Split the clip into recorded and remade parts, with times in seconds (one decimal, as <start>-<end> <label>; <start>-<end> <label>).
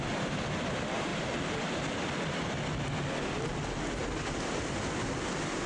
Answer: 0.0-5.7 recorded